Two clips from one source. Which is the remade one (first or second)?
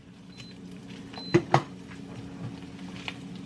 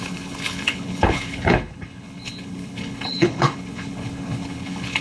second